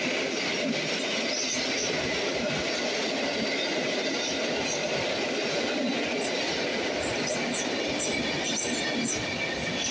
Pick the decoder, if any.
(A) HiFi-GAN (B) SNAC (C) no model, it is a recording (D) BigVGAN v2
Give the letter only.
C